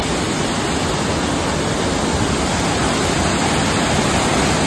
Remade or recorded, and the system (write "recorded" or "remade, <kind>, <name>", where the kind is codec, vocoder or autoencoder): recorded